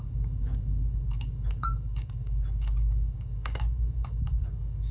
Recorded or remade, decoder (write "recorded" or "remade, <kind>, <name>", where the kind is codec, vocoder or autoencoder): remade, codec, DAC